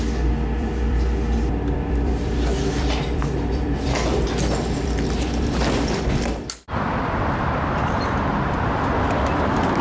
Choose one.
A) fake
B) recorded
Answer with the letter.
A